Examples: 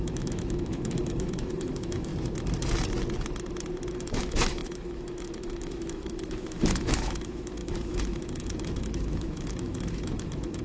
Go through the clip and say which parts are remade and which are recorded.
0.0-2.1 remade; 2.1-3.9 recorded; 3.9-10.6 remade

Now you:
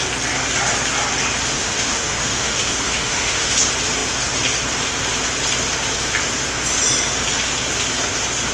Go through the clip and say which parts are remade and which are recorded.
0.0-1.5 recorded; 1.5-3.5 remade; 3.5-8.5 recorded

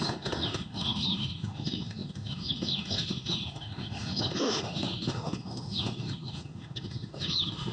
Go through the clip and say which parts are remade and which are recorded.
0.0-7.7 remade

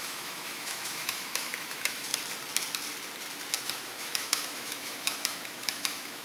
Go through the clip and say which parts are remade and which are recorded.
0.0-2.1 remade; 2.1-3.6 recorded; 3.6-6.2 remade